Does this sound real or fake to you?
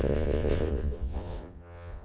fake